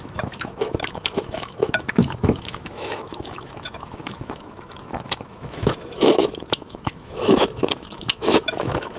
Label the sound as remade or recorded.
remade